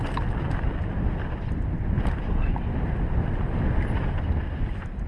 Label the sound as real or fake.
real